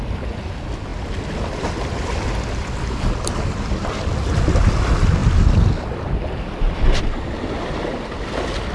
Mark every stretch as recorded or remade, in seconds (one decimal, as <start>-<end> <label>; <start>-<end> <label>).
0.0-8.7 recorded